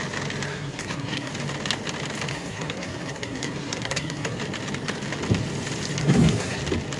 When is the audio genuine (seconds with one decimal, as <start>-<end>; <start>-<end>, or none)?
0.0-0.5; 1.3-2.3; 4.4-6.0; 6.6-7.0

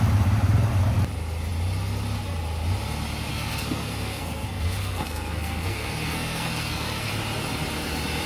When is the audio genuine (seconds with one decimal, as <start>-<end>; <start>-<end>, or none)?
0.0-3.3; 7.1-8.3

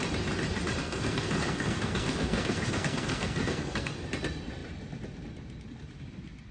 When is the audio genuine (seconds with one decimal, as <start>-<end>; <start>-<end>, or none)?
0.0-0.8; 3.9-6.5

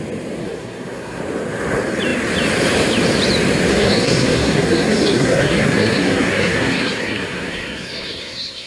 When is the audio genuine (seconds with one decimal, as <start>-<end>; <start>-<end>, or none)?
0.0-0.4; 1.2-3.7

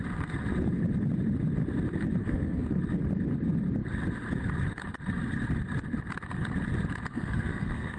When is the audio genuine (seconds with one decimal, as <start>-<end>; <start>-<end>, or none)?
0.0-2.2; 2.8-7.1

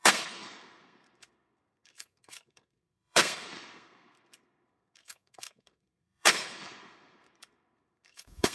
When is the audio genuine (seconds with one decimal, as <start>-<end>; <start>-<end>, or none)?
none

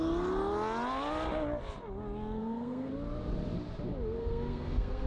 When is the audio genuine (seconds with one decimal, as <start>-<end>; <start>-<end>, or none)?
0.0-2.4; 2.9-4.2